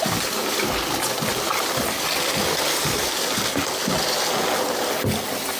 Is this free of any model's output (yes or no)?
yes